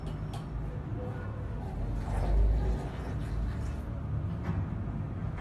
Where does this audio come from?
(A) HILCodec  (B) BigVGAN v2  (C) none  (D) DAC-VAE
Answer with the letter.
C